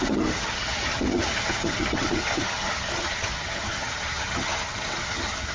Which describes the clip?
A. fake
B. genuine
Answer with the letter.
A